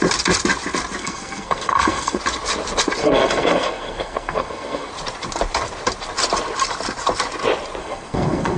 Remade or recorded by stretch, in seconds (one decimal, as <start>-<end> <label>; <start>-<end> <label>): 0.0-1.0 recorded; 1.0-2.2 remade; 2.2-3.0 recorded; 3.0-4.9 remade; 4.9-7.8 recorded; 7.8-8.6 remade